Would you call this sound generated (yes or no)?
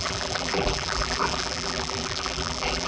yes